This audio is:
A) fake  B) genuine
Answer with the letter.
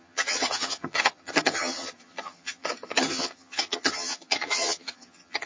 A